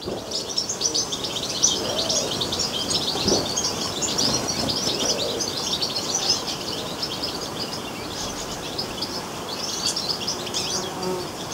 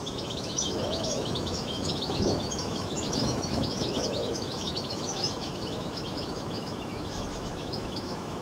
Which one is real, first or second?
first